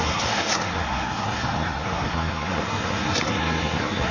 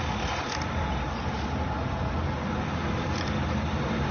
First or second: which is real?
second